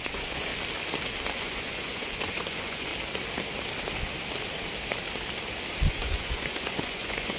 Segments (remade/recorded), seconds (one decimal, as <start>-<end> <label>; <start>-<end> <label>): 0.0-0.5 remade; 0.5-1.4 recorded; 1.4-2.9 remade; 2.9-5.9 recorded; 5.9-7.4 remade